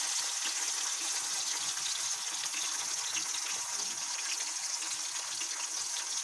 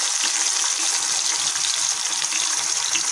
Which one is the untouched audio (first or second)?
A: second